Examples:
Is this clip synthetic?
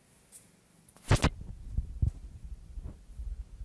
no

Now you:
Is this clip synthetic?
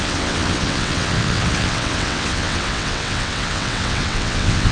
yes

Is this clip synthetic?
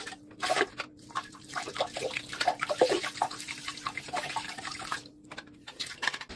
yes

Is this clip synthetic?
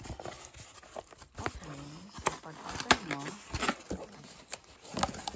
no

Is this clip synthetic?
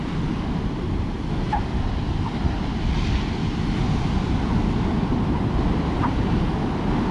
no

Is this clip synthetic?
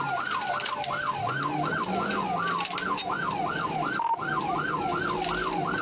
no